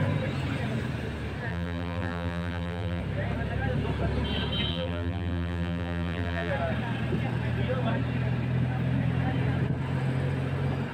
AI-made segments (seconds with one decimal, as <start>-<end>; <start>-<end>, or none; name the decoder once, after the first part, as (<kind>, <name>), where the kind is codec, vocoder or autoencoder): 1.5-3.0 (vocoder, BigVGAN v2); 4.7-6.5